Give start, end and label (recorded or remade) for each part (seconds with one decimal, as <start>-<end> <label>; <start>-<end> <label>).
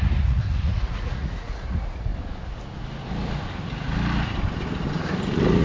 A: 0.0-2.1 remade; 2.1-5.6 recorded